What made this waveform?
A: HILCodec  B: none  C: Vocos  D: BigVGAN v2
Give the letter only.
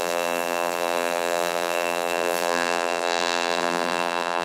D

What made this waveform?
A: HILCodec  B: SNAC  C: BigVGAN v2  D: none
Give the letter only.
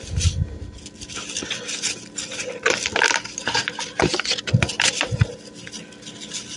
C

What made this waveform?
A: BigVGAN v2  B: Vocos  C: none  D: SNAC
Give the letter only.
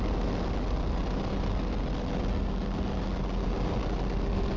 C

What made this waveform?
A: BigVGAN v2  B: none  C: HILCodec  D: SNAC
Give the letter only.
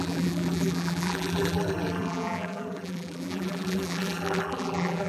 A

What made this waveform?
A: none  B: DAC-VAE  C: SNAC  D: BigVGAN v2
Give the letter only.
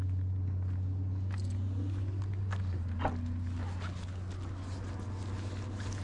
A